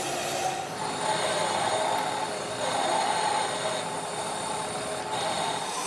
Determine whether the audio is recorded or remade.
recorded